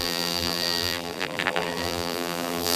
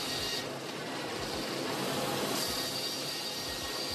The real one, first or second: second